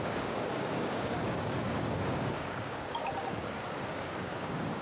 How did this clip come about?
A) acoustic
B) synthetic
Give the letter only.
B